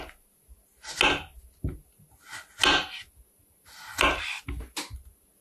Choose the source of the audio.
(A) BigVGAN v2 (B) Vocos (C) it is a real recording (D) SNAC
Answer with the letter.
C